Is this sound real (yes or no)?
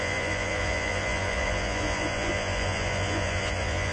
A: no